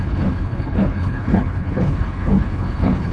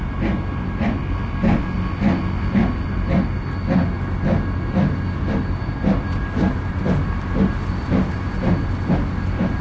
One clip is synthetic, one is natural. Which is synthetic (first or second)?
first